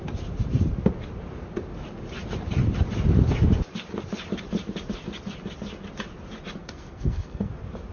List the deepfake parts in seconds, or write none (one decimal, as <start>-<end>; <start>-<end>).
6.6-7.5